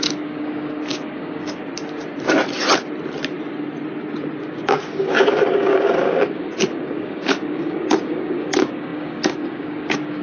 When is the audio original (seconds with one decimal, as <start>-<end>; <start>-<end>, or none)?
1.6-4.4